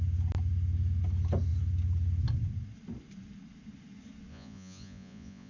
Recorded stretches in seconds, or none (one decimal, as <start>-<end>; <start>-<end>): 0.0-4.3